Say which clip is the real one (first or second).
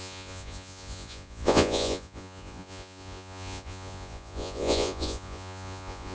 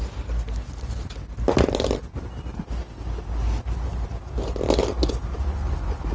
second